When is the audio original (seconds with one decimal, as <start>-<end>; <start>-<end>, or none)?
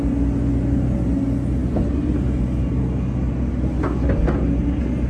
0.0-5.1